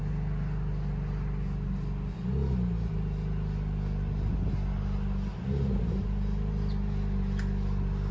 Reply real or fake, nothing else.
real